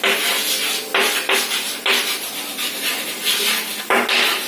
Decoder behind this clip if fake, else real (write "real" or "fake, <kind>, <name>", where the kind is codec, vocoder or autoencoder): real